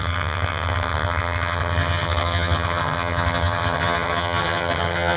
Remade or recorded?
remade